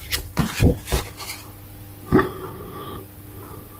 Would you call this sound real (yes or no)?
yes